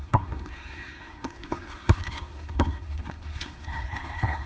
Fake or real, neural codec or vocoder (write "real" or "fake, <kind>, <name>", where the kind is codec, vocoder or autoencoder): fake, codec, SNAC